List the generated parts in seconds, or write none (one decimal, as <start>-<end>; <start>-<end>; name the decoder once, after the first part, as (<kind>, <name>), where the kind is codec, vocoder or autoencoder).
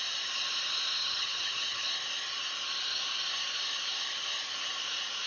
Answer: 1.0-1.9 (vocoder, HiFi-GAN)